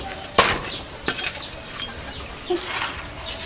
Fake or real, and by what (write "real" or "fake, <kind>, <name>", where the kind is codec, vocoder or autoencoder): real